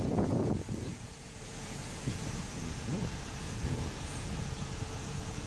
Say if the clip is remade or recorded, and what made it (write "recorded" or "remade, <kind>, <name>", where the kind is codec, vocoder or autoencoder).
remade, vocoder, Vocos